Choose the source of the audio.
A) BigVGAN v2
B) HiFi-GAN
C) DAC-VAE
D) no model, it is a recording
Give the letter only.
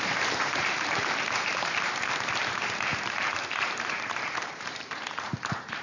A